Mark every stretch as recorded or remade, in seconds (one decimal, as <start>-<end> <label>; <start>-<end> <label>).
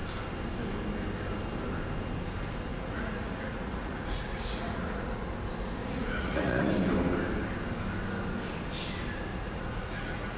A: 0.0-2.7 recorded; 2.7-5.3 remade; 5.3-5.8 recorded; 5.8-6.7 remade; 6.7-9.3 recorded; 9.3-10.4 remade